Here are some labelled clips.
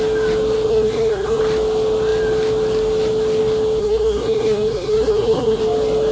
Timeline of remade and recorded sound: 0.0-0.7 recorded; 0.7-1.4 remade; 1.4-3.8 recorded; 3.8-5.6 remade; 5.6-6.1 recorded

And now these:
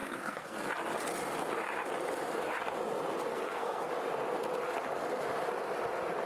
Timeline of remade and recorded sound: 0.0-0.7 remade; 0.7-3.3 recorded; 3.3-3.9 remade; 3.9-6.3 recorded

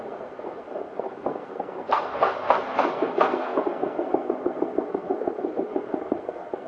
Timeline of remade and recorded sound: 0.0-6.7 remade

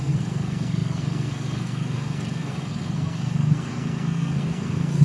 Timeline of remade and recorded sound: 0.0-5.0 remade

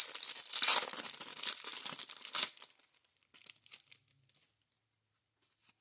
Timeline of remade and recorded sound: 0.0-5.8 recorded